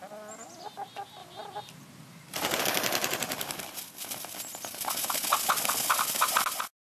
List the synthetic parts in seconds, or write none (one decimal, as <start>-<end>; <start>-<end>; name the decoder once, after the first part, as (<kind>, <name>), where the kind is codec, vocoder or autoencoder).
none